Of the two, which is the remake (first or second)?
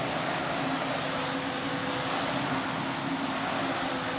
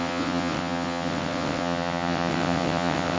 second